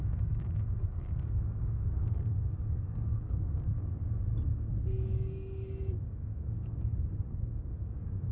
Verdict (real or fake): fake